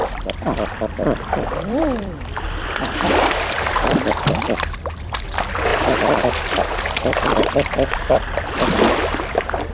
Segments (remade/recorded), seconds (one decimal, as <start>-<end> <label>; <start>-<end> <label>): 0.0-9.7 remade